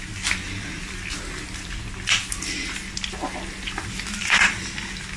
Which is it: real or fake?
real